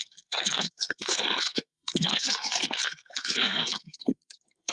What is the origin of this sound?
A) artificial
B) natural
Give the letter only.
A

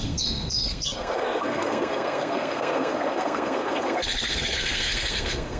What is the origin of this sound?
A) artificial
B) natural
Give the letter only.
A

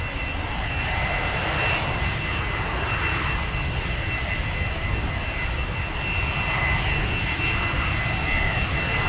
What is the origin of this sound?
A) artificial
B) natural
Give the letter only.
B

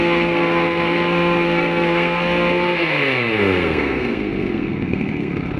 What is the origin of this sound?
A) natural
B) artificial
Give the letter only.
B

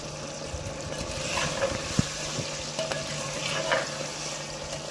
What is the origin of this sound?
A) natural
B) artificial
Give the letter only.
A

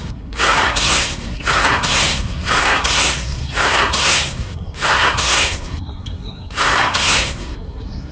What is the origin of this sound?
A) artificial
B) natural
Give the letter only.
A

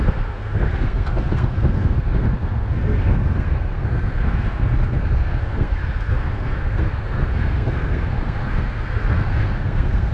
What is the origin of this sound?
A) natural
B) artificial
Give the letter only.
B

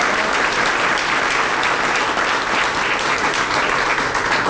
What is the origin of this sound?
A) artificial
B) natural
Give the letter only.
B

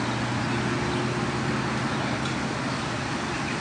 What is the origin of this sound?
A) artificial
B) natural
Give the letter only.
B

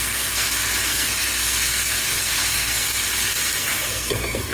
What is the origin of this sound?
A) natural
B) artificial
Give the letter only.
B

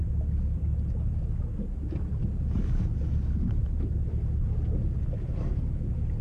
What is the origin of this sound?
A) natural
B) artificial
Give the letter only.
A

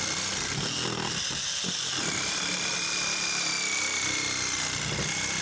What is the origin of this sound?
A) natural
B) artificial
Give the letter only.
A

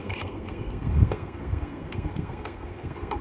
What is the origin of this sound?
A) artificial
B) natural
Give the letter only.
A